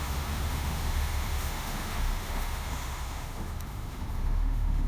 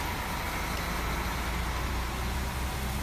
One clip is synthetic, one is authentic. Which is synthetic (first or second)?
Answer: first